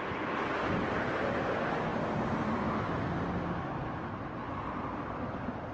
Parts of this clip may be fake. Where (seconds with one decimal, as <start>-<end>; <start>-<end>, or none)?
none